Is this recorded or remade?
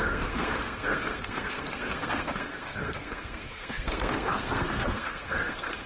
remade